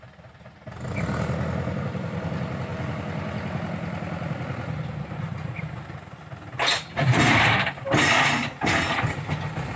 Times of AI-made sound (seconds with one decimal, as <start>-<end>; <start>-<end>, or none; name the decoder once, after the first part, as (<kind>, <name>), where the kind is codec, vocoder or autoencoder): none